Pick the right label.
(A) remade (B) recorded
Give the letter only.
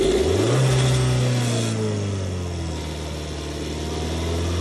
B